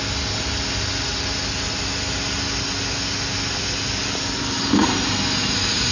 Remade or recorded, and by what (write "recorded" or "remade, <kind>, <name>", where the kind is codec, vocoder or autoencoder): recorded